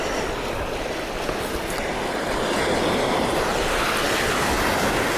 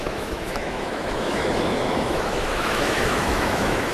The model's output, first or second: second